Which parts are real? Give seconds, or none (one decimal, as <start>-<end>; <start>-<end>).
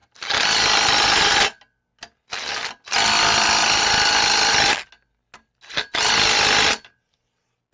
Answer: 0.0-7.7